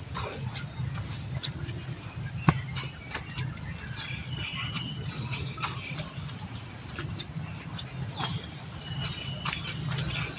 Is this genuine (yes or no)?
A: yes